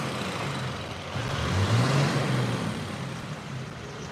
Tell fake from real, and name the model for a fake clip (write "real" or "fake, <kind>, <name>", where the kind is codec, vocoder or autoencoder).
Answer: real